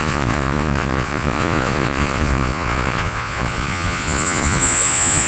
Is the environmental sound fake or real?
fake